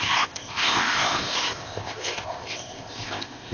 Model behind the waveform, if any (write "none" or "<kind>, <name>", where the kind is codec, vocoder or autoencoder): codec, ZipCodec